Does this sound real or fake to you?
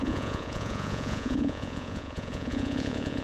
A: fake